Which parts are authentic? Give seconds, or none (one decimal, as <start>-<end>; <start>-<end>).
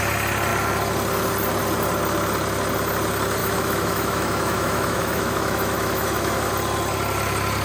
0.0-3.4; 6.5-7.6